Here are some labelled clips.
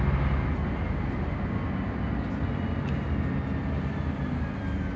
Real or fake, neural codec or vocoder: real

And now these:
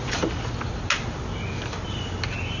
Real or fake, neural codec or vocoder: real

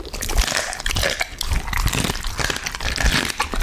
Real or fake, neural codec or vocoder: real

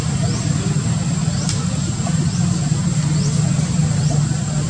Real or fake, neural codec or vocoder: real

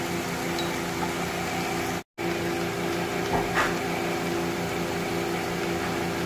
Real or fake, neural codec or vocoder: real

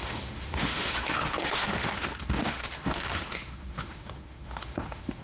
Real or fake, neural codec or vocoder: fake, autoencoder, DAC-VAE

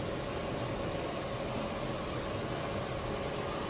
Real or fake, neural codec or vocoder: real